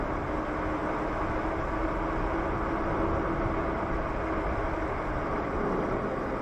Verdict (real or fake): real